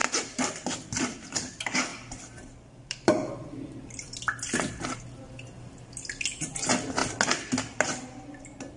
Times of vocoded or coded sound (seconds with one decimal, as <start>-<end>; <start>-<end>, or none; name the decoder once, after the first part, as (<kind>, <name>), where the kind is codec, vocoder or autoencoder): 0.0-1.0 (vocoder, BigVGAN v2); 1.9-5.2